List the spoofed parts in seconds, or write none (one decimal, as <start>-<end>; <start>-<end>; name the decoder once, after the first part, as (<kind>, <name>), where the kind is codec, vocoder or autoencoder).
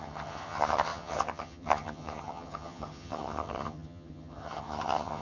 0.0-5.2 (vocoder, HiFi-GAN)